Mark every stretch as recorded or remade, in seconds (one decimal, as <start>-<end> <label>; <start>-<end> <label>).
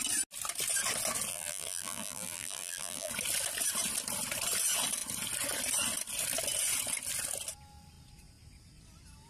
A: 0.0-1.3 recorded; 1.3-3.1 remade; 3.1-9.3 recorded